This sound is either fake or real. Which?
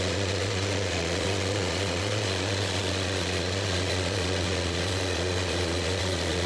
fake